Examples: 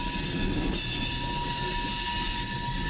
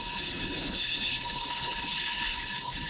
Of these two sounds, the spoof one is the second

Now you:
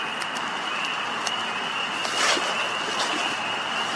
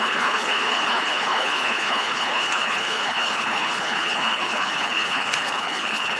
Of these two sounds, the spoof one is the second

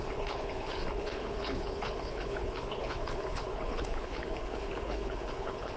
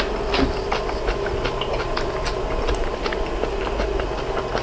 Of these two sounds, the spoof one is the first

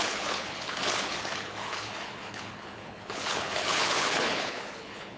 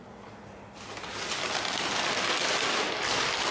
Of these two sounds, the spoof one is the first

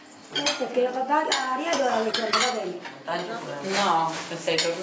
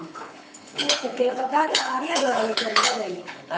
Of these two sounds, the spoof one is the second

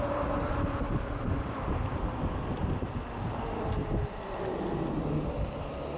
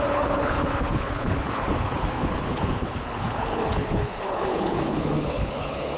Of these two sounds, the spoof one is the second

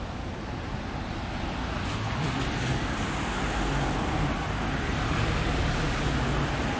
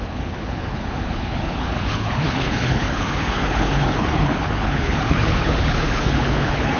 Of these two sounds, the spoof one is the second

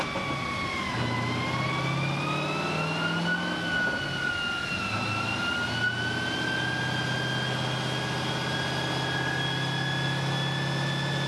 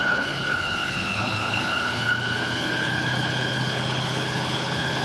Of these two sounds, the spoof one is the second